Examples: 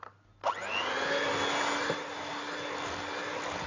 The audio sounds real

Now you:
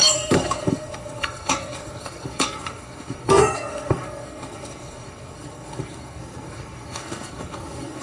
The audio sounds fake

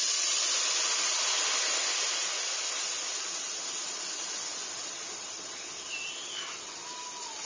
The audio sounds real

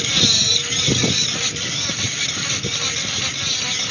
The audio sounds real